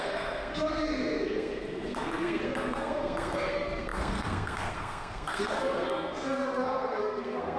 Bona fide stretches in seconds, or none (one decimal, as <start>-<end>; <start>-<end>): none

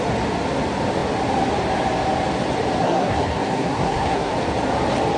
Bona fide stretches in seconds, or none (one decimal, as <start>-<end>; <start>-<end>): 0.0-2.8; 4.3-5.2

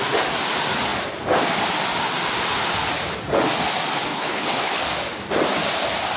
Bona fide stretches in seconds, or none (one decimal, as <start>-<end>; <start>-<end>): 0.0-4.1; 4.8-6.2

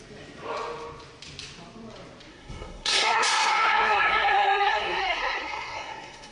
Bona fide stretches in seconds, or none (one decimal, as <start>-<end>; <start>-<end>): 0.0-2.3

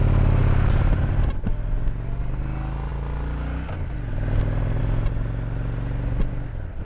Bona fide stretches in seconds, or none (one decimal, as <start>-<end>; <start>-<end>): 0.0-6.8

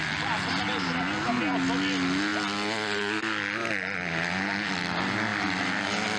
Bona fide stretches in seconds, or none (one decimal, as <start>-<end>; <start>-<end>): 0.0-6.2

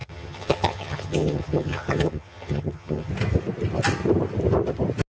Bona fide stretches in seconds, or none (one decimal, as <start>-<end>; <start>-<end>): 3.1-5.1